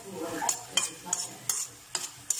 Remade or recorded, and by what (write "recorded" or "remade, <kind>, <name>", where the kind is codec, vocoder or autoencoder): recorded